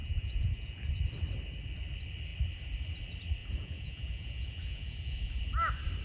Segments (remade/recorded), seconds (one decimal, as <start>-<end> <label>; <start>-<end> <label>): 0.0-0.9 remade; 0.9-3.4 recorded; 3.4-5.4 remade; 5.4-6.0 recorded